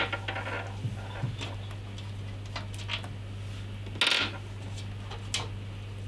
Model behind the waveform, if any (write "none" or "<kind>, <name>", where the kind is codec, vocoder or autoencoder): none